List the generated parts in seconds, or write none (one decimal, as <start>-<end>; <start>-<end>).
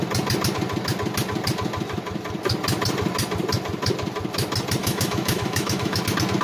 4.8-6.0